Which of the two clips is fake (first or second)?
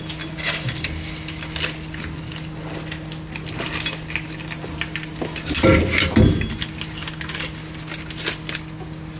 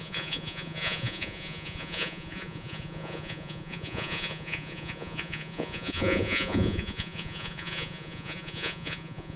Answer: second